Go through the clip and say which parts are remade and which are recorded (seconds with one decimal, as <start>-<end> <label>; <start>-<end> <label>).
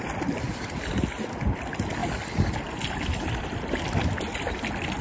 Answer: 0.0-5.0 recorded